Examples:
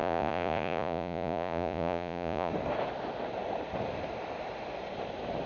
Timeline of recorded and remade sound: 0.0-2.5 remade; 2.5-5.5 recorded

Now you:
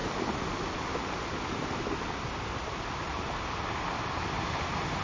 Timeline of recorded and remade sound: 0.0-5.0 recorded

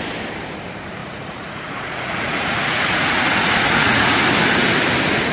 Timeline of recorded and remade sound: 0.0-1.0 recorded; 1.0-4.2 remade; 4.2-5.3 recorded

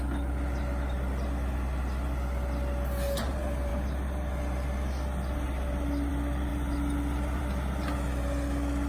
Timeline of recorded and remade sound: 0.0-8.9 recorded

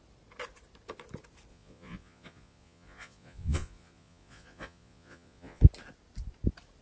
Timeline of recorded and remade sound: 0.0-1.5 recorded; 1.5-5.6 remade; 5.6-6.8 recorded

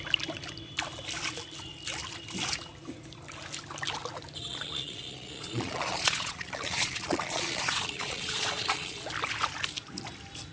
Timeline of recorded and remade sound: 0.0-4.5 recorded; 4.5-9.0 remade; 9.0-10.5 recorded

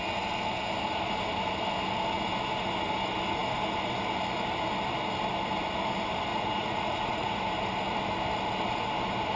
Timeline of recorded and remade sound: 0.0-6.3 recorded; 6.3-7.4 remade; 7.4-9.4 recorded